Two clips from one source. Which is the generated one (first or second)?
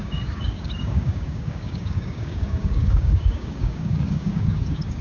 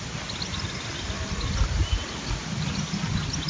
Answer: first